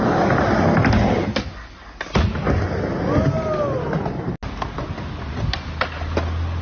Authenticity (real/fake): real